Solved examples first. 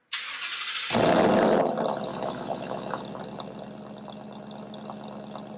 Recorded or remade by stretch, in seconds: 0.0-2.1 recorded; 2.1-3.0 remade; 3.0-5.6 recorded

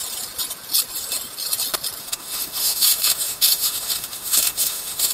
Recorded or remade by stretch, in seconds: 0.0-2.0 recorded; 2.0-5.1 remade

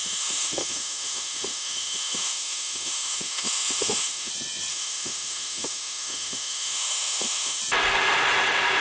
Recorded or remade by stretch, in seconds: 0.0-4.3 remade; 4.3-4.7 recorded; 4.7-7.6 remade; 7.6-8.8 recorded

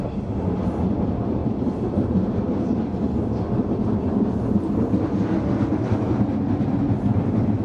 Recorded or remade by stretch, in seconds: 0.0-7.6 recorded

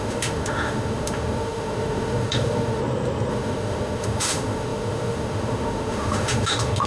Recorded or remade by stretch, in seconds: 0.0-2.8 remade; 2.8-3.3 recorded; 3.3-6.9 remade

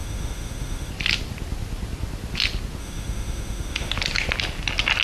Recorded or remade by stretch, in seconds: 0.0-0.9 remade; 0.9-2.8 recorded; 2.8-3.9 remade; 3.9-5.0 recorded